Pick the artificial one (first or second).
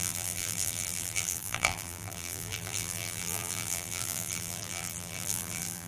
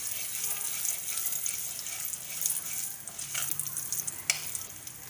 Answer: first